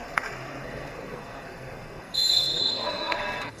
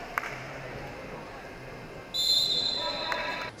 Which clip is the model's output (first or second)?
first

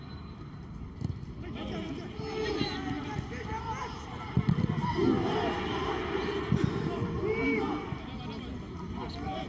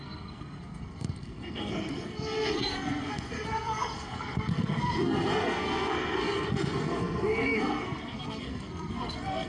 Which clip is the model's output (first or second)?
second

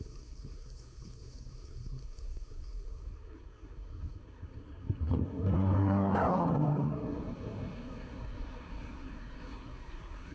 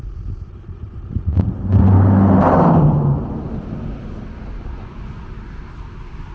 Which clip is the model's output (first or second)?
first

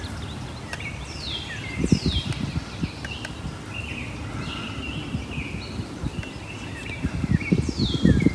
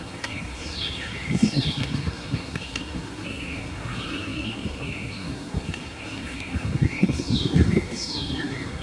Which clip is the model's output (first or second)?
second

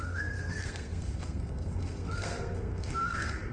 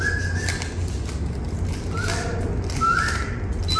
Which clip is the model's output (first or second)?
first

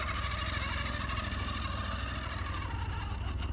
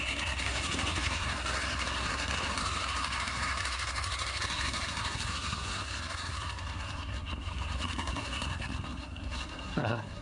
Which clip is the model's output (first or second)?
second